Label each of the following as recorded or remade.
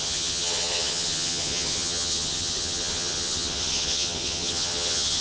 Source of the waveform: remade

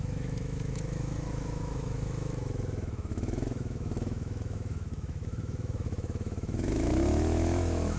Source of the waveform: remade